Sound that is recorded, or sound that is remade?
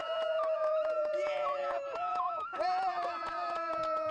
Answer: remade